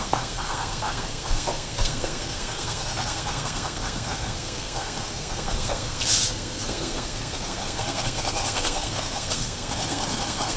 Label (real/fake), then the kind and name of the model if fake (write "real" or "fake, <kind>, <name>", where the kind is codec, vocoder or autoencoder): fake, codec, SNAC